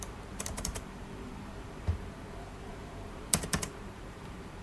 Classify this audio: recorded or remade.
remade